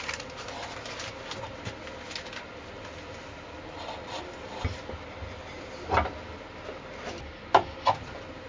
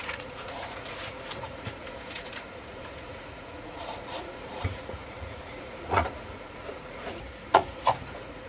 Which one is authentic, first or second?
first